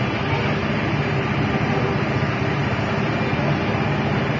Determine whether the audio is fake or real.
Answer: real